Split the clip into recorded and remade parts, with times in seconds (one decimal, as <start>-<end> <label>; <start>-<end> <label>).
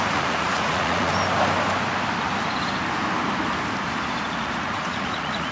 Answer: 0.0-1.1 remade; 1.1-4.4 recorded; 4.4-5.5 remade